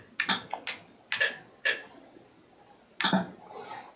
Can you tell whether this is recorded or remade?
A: recorded